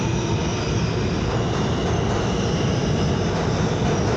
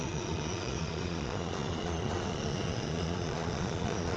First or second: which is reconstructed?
second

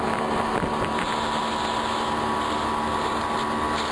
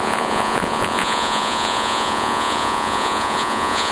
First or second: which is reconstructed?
second